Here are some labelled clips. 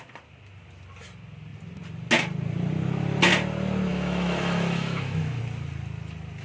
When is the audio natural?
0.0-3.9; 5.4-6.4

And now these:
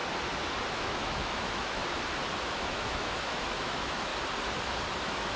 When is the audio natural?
0.0-0.7; 1.8-2.4; 4.1-5.0

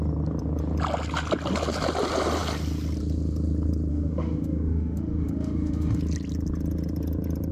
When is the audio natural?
0.0-3.9; 6.0-7.5